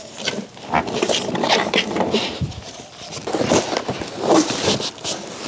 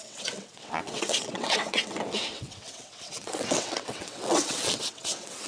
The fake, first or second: second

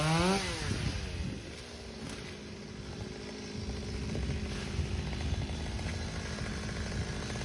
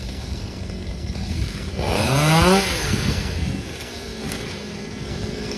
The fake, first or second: second